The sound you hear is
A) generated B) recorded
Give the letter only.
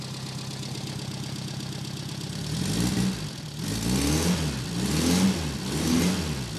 B